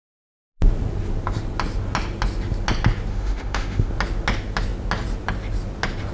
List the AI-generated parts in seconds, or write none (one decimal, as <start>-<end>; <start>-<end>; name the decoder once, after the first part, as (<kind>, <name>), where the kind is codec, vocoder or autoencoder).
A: 3.1-3.9 (autoencoder, DAC-VAE)